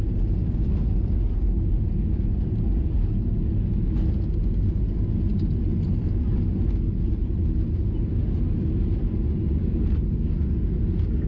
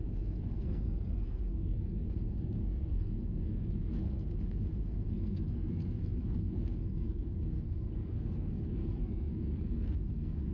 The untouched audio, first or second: first